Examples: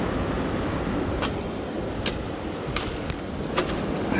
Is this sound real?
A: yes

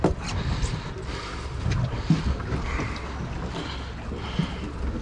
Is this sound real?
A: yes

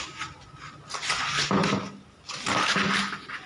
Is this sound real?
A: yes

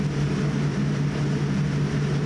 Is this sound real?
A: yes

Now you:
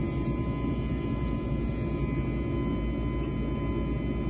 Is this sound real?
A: yes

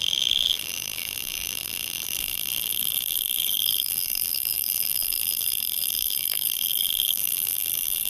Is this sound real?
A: no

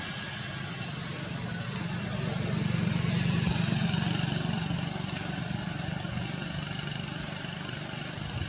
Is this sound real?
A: yes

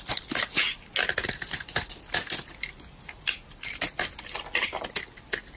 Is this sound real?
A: yes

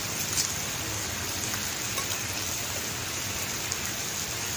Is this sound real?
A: yes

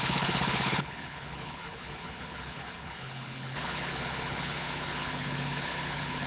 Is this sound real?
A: no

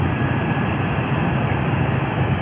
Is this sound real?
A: yes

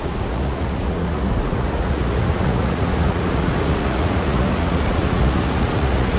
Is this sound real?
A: no